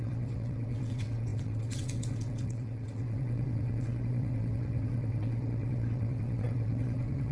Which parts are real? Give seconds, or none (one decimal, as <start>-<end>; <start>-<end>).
none